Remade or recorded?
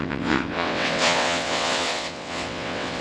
remade